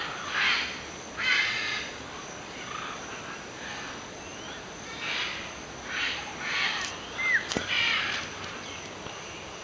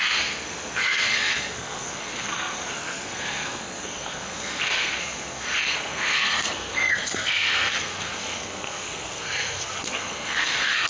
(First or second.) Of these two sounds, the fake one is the second